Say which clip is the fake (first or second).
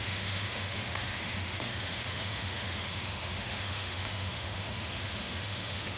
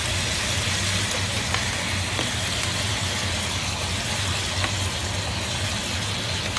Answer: first